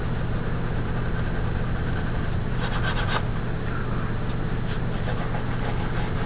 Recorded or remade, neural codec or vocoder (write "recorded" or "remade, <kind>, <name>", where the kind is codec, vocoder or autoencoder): recorded